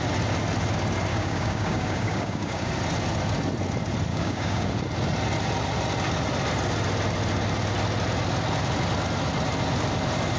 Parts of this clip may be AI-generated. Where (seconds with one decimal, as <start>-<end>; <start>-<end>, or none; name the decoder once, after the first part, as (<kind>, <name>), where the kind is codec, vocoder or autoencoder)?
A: 1.1-2.7 (codec, DAC); 4.1-4.7